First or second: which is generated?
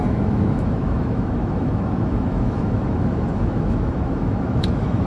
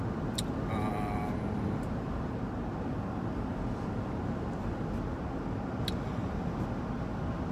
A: first